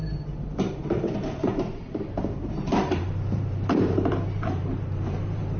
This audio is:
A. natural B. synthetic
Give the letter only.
B